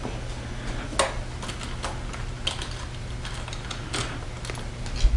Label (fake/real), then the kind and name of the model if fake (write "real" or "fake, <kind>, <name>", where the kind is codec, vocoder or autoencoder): real